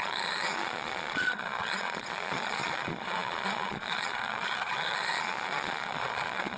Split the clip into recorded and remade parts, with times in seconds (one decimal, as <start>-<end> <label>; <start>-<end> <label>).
0.0-6.6 remade